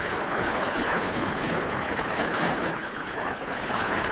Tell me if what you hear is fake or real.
fake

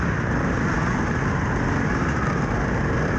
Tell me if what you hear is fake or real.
real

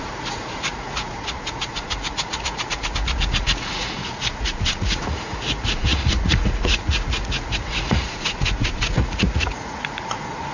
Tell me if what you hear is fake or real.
fake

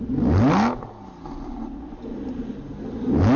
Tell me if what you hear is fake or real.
real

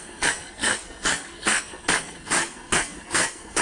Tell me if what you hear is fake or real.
fake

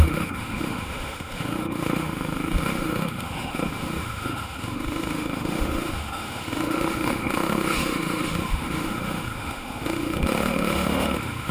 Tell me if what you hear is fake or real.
fake